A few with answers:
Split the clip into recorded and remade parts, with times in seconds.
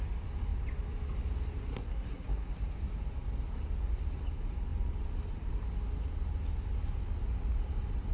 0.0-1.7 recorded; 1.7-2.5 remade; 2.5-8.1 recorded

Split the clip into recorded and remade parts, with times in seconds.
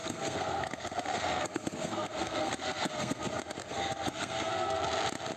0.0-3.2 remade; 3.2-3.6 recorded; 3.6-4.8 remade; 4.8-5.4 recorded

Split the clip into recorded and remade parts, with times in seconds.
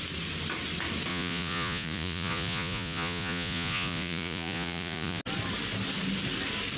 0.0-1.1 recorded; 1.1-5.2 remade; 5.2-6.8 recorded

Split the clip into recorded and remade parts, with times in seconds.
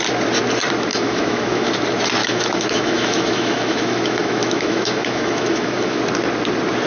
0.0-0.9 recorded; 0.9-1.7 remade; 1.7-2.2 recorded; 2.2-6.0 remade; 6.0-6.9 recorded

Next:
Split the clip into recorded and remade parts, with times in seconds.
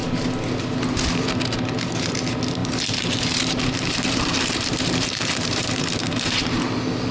0.0-2.6 recorded; 2.6-6.6 remade; 6.6-7.1 recorded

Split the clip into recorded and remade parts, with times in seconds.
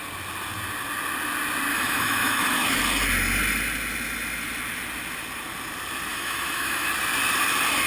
0.0-1.7 recorded; 1.7-2.8 remade; 2.8-6.1 recorded; 6.1-6.9 remade; 6.9-7.9 recorded